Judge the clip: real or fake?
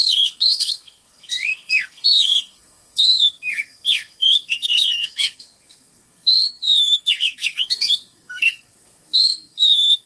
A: fake